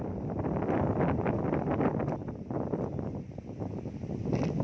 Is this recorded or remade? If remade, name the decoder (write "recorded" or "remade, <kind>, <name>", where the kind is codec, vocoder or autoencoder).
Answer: recorded